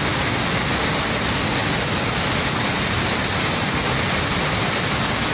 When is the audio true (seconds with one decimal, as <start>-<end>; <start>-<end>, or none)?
0.0-5.3